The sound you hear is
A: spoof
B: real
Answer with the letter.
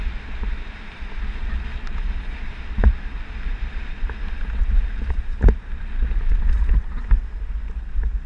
B